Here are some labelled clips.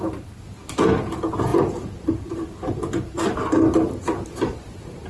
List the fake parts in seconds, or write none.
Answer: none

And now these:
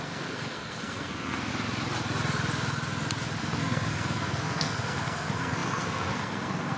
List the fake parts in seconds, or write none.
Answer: 0.0-1.5; 3.4-6.8